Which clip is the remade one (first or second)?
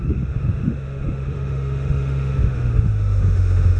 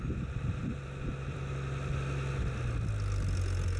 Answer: first